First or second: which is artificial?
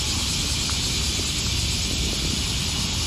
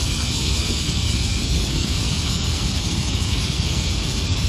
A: second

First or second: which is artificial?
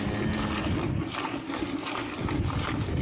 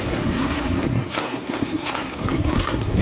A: second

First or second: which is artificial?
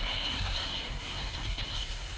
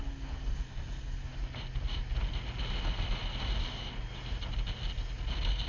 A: first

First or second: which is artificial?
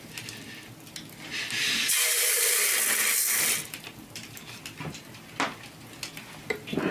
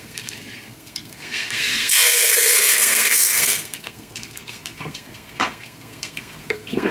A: second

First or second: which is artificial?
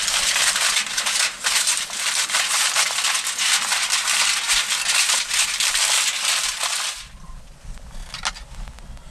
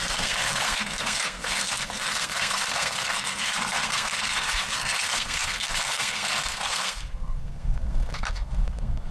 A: second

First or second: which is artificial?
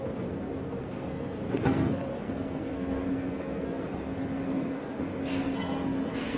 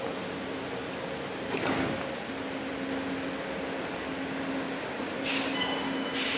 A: first